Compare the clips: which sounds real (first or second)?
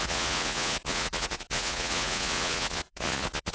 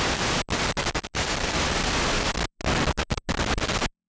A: second